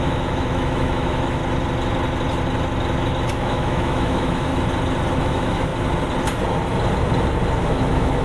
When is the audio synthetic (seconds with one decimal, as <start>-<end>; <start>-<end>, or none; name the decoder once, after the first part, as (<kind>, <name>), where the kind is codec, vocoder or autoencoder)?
0.0-1.4 (autoencoder, DAC-VAE); 3.3-4.5; 5.2-5.7; 7.6-8.2